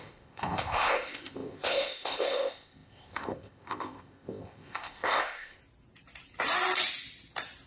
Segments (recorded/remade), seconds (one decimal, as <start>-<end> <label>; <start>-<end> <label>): 0.0-5.6 remade; 5.6-7.7 recorded